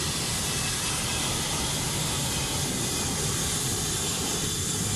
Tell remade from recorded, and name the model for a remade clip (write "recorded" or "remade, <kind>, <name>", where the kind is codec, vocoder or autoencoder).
recorded